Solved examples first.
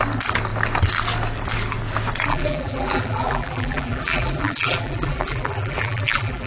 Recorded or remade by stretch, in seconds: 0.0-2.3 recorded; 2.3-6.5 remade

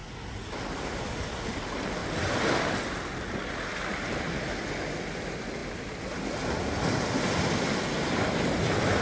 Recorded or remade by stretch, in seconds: 0.0-9.0 recorded

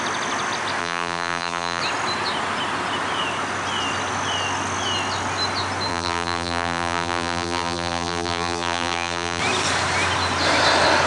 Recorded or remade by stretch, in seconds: 0.0-0.8 recorded; 0.8-1.8 remade; 1.8-5.9 recorded; 5.9-9.4 remade; 9.4-11.1 recorded

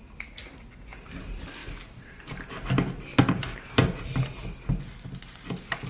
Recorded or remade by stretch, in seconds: 0.0-5.9 recorded

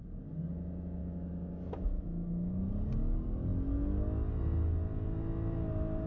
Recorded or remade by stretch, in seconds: 0.0-1.0 recorded; 1.0-2.7 remade; 2.7-6.1 recorded

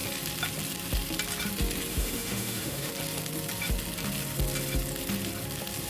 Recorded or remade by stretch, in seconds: 0.0-1.9 recorded; 1.9-2.9 remade; 2.9-5.9 recorded

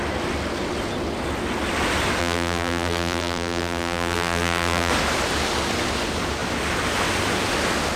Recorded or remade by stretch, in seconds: 0.0-2.2 recorded; 2.2-4.9 remade; 4.9-8.0 recorded

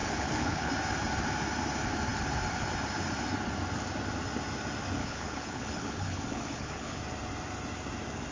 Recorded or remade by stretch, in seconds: 0.0-0.7 remade; 0.7-5.0 recorded; 5.0-7.0 remade; 7.0-8.3 recorded